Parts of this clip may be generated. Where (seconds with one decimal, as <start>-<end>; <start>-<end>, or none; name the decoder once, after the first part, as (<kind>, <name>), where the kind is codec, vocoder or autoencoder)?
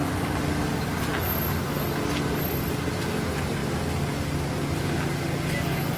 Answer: none